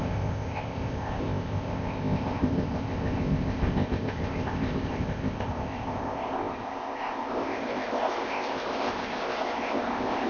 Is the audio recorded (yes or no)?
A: no